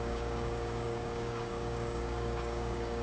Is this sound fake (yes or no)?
yes